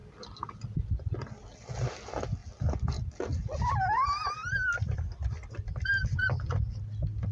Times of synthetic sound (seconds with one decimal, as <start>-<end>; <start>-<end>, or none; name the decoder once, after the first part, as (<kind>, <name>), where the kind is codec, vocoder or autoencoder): 0.0-0.9 (vocoder, BigVGAN v2); 4.4-6.8